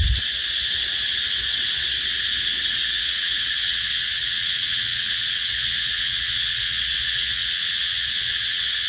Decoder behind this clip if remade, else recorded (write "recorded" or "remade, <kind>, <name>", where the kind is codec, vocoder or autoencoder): remade, vocoder, WaveNeXt